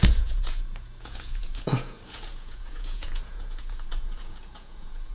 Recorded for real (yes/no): no